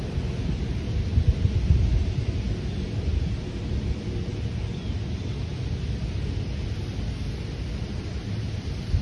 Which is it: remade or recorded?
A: recorded